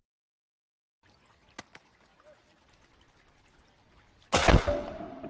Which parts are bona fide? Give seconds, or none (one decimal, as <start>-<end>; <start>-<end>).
0.0-5.3